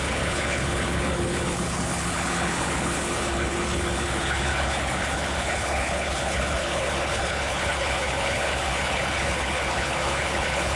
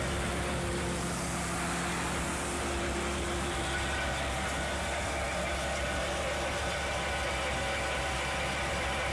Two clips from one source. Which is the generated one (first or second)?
first